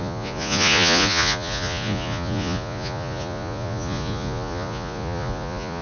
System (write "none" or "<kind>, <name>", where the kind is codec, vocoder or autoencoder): vocoder, Vocos